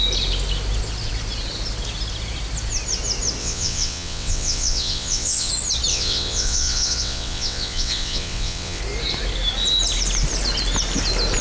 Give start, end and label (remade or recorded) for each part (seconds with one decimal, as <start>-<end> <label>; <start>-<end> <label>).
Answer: 0.0-3.4 recorded; 3.4-5.5 remade; 5.5-5.9 recorded; 5.9-8.8 remade; 8.8-11.4 recorded